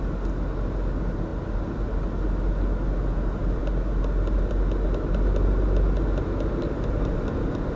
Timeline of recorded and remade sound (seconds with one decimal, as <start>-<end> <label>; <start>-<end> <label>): 0.0-7.8 recorded